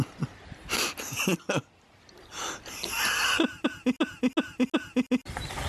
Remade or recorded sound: recorded